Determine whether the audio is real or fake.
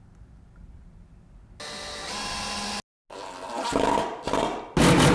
real